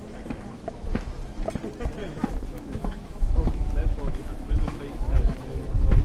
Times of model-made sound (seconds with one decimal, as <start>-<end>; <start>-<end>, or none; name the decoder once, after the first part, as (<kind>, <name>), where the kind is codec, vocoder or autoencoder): 0.0-1.2 (autoencoder, DAC-VAE); 2.0-4.8